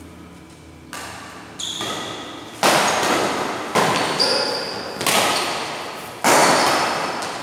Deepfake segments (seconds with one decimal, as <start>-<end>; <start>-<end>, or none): none